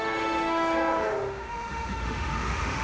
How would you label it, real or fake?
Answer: fake